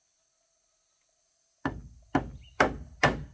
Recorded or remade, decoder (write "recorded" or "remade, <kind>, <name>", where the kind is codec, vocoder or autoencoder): recorded